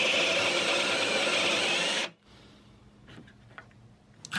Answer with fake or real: real